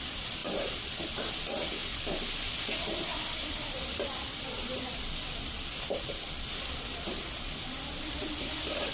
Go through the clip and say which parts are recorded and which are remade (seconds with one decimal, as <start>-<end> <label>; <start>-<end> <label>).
0.0-0.4 remade; 0.4-0.9 recorded; 0.9-1.8 remade; 1.8-2.3 recorded; 2.3-8.9 remade